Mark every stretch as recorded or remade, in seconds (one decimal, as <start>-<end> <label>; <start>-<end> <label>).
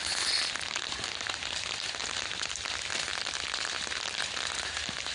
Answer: 0.0-5.1 recorded